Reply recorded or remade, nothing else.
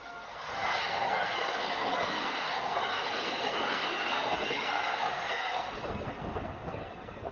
remade